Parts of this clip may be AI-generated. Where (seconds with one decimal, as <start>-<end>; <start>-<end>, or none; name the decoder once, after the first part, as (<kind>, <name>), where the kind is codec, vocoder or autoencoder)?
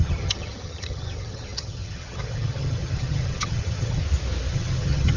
0.0-4.0 (vocoder, HiFi-GAN); 4.5-5.2